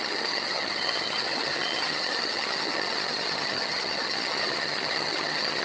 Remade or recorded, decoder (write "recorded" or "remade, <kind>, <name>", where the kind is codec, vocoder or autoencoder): remade, vocoder, HiFi-GAN